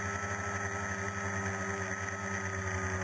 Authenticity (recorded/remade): recorded